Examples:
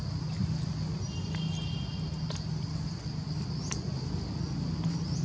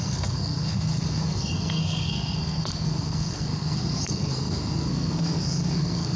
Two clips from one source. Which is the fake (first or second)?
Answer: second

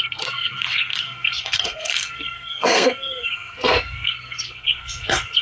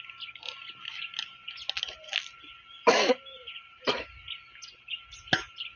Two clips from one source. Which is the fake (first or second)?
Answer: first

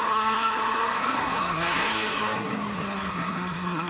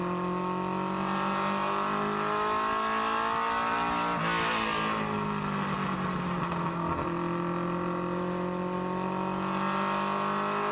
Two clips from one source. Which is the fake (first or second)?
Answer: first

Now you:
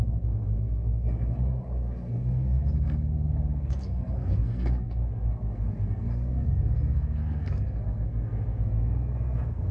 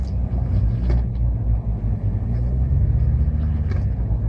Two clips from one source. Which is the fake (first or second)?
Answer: first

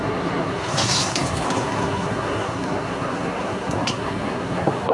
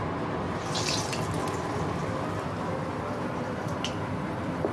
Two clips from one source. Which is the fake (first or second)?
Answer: first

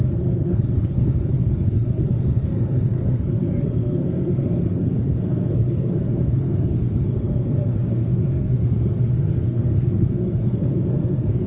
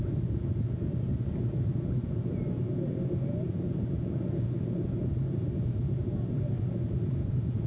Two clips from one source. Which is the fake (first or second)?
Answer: first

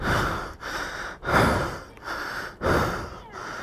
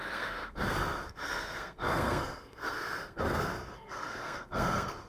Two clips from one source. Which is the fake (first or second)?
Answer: second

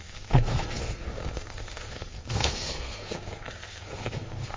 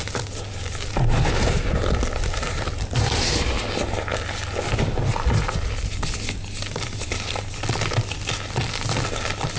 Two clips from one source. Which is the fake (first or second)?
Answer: first